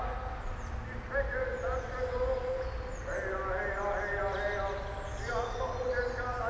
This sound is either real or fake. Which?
real